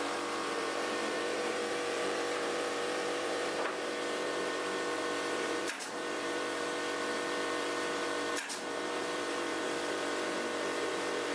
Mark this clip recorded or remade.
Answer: remade